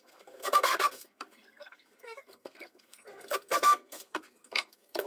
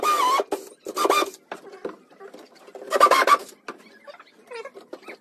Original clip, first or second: second